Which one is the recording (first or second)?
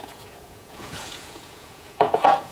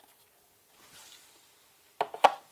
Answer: second